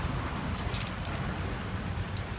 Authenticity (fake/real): real